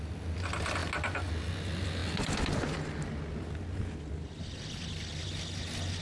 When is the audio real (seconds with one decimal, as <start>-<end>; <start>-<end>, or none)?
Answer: 0.0-6.0

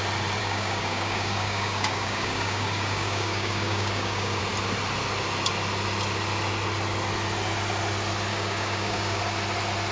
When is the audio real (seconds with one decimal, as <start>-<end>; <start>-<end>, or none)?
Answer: 0.0-0.4; 4.4-8.3; 9.2-9.9

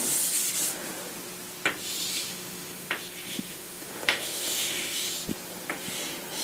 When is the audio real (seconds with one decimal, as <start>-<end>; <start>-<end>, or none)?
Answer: 0.0-2.1; 2.9-3.3; 5.1-6.4

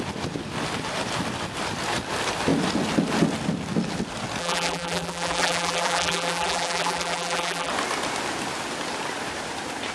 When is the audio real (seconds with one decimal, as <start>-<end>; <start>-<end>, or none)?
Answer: 0.0-4.4; 7.7-9.9

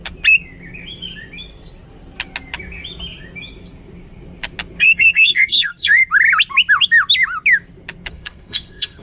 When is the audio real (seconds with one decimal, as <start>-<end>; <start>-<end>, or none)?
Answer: 0.0-4.8; 6.0-8.1

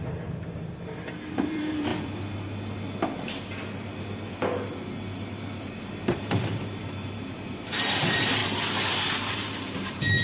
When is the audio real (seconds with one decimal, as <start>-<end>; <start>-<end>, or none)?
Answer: 1.9-5.8; 8.4-9.3